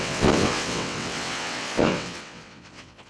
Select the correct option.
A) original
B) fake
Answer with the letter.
B